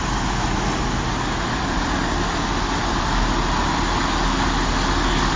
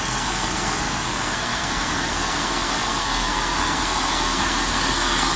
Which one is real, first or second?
first